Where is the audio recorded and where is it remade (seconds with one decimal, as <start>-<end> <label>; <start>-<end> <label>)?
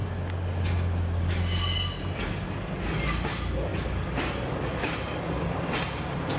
0.0-6.4 recorded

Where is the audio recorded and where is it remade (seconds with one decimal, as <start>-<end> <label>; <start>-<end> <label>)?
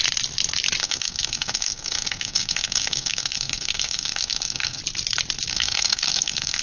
0.0-0.8 recorded; 0.8-4.8 remade; 4.8-5.5 recorded; 5.5-6.6 remade